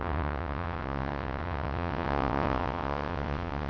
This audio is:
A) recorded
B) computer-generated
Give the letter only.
B